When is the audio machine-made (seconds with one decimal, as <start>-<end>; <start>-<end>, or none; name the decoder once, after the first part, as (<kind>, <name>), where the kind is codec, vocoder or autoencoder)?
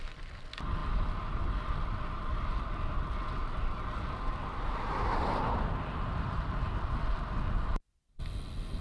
none